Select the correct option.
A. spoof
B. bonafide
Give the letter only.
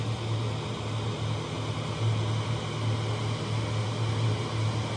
B